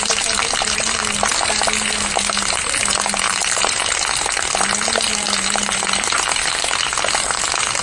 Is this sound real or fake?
real